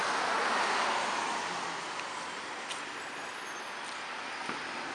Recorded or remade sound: recorded